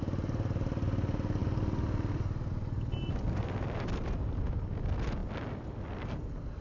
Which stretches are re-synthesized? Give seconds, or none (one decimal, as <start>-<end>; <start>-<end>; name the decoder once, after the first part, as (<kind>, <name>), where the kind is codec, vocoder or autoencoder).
none